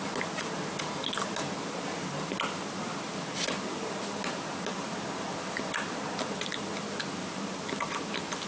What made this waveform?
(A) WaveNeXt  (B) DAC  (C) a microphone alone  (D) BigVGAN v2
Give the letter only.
C